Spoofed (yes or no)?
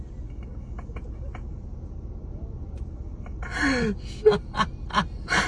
no